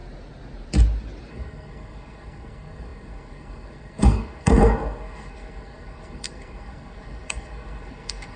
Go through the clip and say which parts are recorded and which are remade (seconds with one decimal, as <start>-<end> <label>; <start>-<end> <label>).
0.0-1.3 recorded; 1.3-8.4 remade

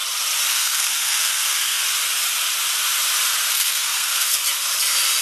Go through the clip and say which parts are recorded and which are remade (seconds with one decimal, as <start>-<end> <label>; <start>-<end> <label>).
0.0-0.5 recorded; 0.5-1.8 remade; 1.8-3.5 recorded; 3.5-4.4 remade; 4.4-5.2 recorded

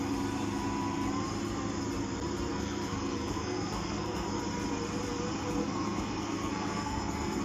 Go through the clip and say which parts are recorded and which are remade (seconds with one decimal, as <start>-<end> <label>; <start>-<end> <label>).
0.0-2.5 recorded; 2.5-4.4 remade; 4.4-5.6 recorded; 5.6-7.4 remade

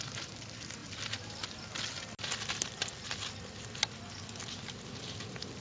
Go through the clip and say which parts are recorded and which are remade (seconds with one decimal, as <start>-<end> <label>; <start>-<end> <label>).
0.0-5.6 recorded

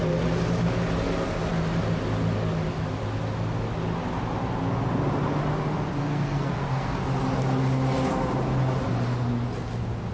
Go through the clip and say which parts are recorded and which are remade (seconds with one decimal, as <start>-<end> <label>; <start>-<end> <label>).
0.0-6.0 recorded; 6.0-7.0 remade; 7.0-10.1 recorded

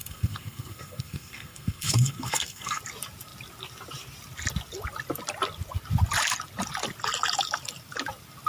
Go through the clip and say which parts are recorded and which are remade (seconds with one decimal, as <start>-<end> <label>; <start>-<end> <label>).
0.0-2.8 remade; 2.8-8.5 recorded

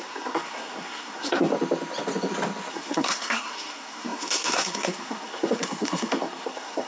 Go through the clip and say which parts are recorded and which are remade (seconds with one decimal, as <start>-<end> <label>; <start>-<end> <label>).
0.0-1.5 remade; 1.5-2.7 recorded; 2.7-6.9 remade

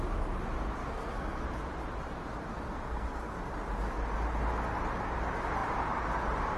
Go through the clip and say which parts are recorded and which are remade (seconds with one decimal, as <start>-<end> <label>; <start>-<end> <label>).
0.0-0.8 recorded; 0.8-1.4 remade; 1.4-2.5 recorded; 2.5-3.4 remade; 3.4-6.6 recorded